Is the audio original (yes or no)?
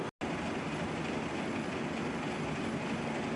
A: yes